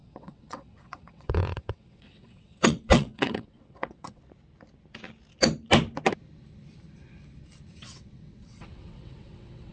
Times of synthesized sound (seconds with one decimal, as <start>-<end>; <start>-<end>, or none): 0.0-4.2; 7.8-9.7